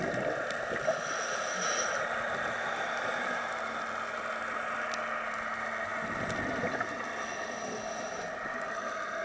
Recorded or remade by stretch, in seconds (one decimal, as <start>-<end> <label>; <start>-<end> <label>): 0.0-9.2 recorded